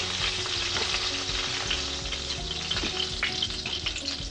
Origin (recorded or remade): recorded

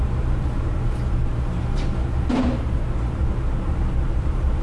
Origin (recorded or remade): remade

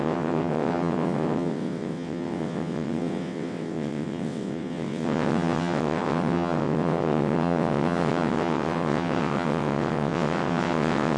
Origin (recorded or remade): remade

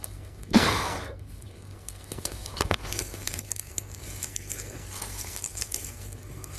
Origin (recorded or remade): remade